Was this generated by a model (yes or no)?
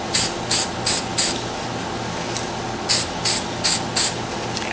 no